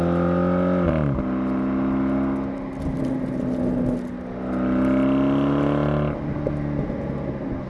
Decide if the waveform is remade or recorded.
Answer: recorded